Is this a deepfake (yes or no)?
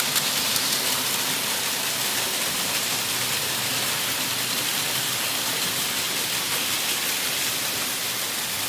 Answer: no